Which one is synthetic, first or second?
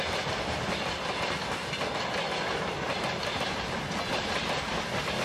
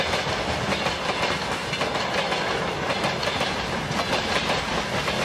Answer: first